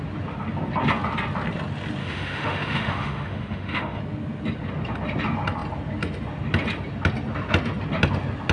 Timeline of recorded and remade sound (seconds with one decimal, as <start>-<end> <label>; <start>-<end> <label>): 0.0-2.0 recorded; 2.0-4.0 remade; 4.0-8.5 recorded